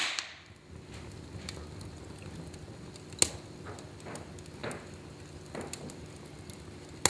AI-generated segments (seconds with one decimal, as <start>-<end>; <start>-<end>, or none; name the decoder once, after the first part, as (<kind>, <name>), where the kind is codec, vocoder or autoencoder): none